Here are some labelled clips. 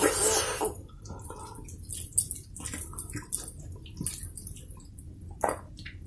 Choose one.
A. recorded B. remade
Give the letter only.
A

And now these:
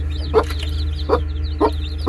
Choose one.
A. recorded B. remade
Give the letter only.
A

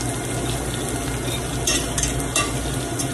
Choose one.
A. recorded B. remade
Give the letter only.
A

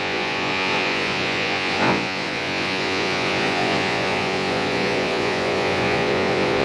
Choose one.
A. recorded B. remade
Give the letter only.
B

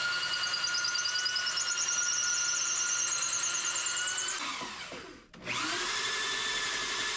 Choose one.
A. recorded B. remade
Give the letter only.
A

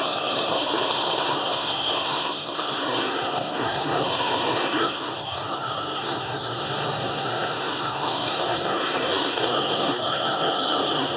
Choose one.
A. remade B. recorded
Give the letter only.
A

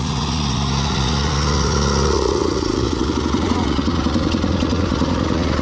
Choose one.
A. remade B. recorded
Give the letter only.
A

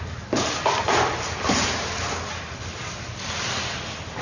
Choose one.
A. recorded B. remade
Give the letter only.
A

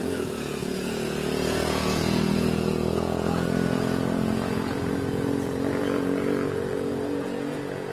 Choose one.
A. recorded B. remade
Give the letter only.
B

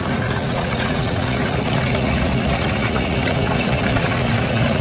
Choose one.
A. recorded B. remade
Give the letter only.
B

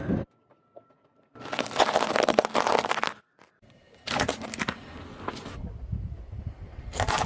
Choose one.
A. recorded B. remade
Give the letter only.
A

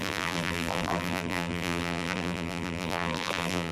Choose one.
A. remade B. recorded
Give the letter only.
A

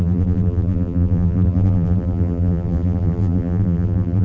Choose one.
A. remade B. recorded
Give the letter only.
A